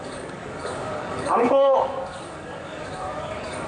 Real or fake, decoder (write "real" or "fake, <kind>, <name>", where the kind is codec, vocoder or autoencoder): fake, codec, DAC